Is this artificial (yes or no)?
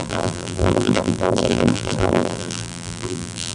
yes